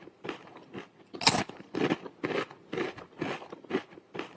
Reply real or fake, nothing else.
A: real